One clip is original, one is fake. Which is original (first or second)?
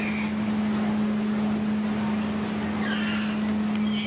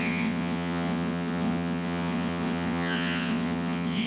first